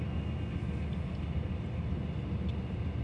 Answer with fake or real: real